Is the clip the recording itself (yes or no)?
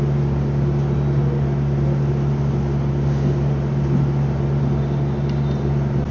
yes